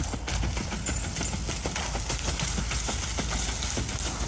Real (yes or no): yes